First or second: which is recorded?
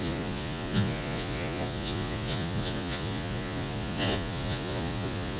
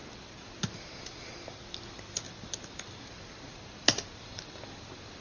second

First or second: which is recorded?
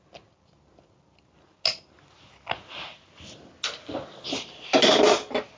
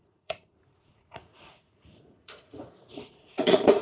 first